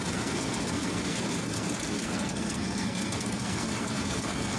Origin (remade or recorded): remade